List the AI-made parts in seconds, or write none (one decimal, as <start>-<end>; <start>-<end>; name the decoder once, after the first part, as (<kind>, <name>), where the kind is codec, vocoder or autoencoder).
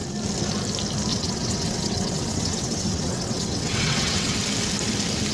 1.1-4.3 (vocoder, WaveNeXt)